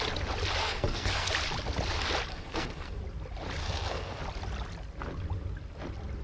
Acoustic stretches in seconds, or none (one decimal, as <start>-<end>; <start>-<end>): 0.0-0.6; 1.3-2.3; 3.0-3.6; 4.2-6.2